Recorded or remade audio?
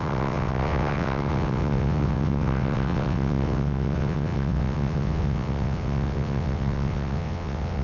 remade